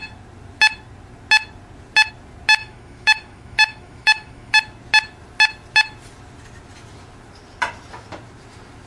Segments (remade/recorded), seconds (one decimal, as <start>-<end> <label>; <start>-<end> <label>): 0.0-2.6 recorded; 2.6-4.6 remade; 4.6-8.9 recorded